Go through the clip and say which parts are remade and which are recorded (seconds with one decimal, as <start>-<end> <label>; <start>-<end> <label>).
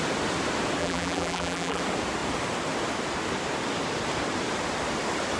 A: 0.0-0.8 recorded; 0.8-1.8 remade; 1.8-5.4 recorded